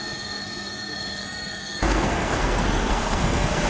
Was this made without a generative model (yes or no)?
no